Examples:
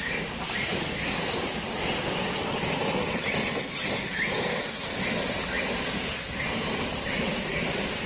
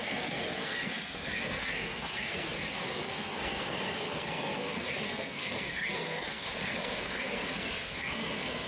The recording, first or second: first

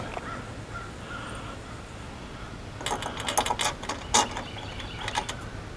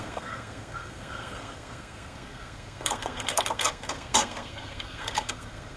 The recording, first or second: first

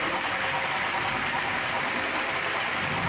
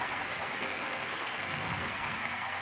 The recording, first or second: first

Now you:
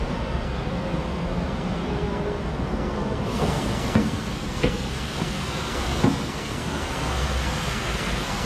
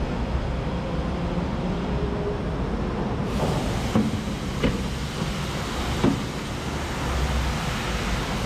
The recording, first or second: second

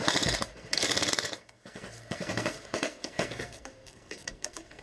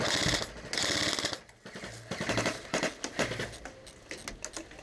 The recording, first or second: second